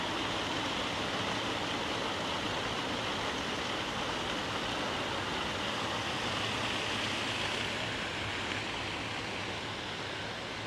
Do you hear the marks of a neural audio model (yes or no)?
no